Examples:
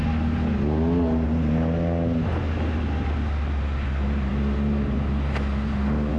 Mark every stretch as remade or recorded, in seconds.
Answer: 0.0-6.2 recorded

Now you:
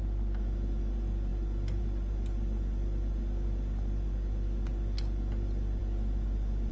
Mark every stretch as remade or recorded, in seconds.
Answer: 0.0-6.7 recorded

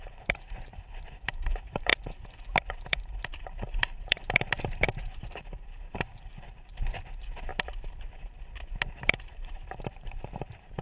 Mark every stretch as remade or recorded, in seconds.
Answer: 0.0-1.9 remade; 1.9-2.9 recorded; 2.9-7.5 remade; 7.5-8.9 recorded; 8.9-10.8 remade